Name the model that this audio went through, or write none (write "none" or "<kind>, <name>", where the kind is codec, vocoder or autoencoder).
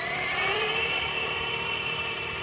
vocoder, BigVGAN v2